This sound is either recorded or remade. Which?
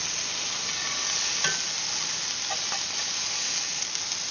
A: recorded